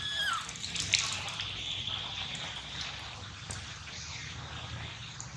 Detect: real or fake real